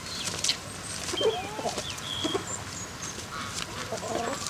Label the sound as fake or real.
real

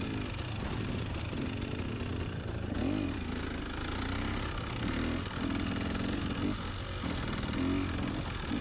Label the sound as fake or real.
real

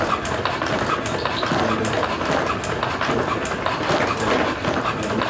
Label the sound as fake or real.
real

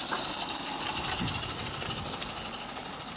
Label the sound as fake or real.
real